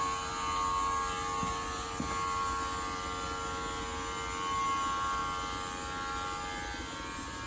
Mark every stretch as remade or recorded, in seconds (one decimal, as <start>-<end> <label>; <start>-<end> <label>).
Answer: 0.0-7.5 recorded